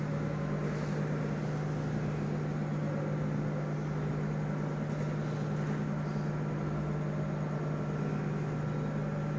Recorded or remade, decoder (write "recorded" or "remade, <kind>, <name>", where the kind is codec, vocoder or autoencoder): recorded